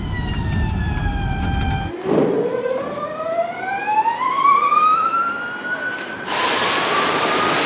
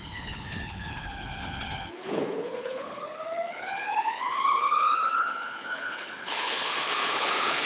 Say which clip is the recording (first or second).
first